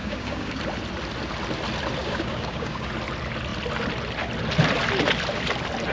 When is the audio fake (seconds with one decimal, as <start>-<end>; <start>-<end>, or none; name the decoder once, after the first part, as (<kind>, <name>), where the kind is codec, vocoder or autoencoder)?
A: 0.0-0.6 (codec, DAC); 2.0-2.9